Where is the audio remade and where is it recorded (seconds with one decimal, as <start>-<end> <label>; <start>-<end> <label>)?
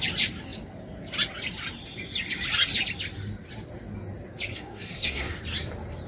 0.0-4.5 recorded; 4.5-5.4 remade; 5.4-6.1 recorded